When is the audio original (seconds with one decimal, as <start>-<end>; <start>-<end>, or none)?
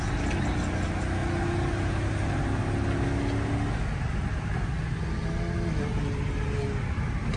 0.0-7.4